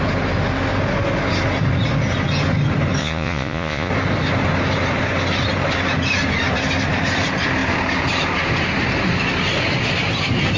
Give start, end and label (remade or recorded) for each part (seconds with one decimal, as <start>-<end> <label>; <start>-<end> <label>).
0.0-3.0 recorded; 3.0-3.9 remade; 3.9-10.6 recorded